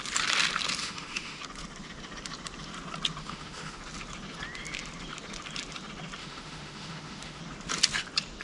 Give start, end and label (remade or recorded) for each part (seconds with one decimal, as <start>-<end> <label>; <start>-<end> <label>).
0.0-0.8 recorded; 0.8-1.4 remade; 1.4-3.2 recorded; 3.2-3.8 remade; 3.8-6.2 recorded; 6.2-7.4 remade; 7.4-8.4 recorded